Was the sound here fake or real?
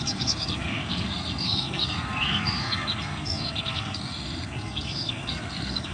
fake